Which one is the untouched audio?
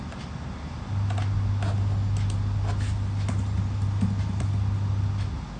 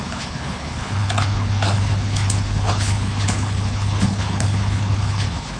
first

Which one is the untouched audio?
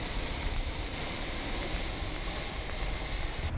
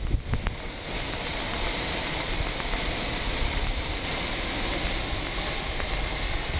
second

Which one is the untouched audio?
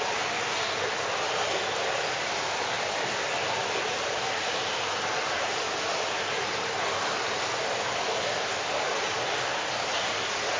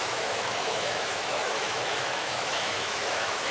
first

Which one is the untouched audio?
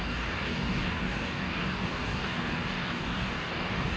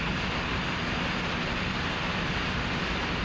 second